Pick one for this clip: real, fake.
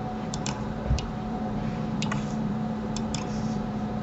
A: fake